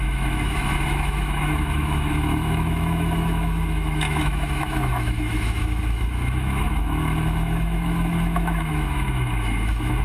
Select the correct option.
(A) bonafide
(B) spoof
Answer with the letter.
B